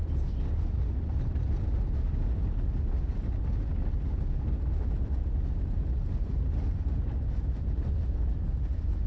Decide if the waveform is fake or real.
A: real